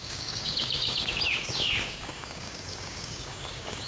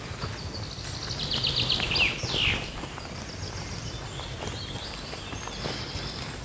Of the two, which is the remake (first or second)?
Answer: first